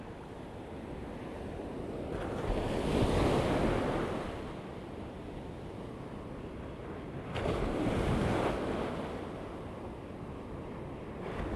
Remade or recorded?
recorded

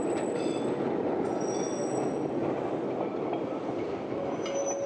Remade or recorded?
recorded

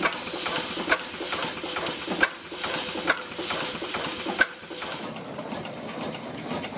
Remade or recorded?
recorded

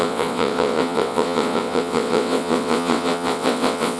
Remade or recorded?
remade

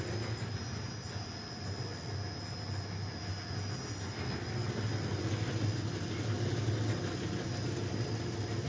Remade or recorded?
recorded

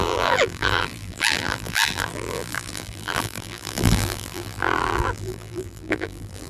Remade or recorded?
remade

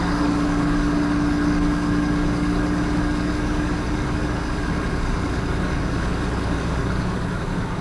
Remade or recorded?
remade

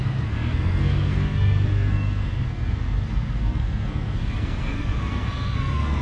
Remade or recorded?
remade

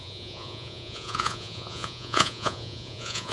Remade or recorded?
remade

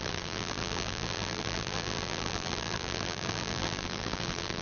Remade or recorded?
remade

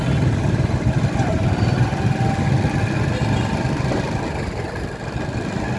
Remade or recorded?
recorded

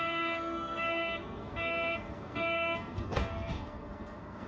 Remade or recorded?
remade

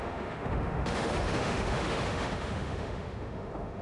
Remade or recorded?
remade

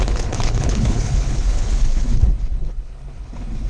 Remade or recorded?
remade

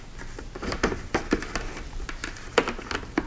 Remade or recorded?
recorded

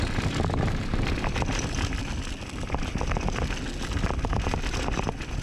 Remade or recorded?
recorded